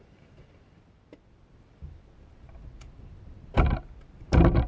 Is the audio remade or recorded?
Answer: recorded